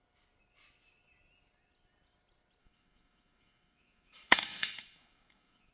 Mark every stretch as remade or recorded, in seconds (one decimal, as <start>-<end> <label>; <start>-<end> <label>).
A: 0.0-2.6 recorded; 2.6-5.7 remade